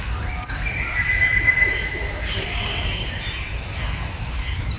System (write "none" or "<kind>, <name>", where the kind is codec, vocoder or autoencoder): none